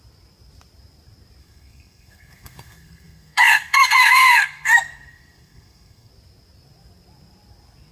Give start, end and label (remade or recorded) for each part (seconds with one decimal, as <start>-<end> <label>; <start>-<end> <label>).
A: 0.0-1.4 recorded; 1.4-6.1 remade; 6.1-7.9 recorded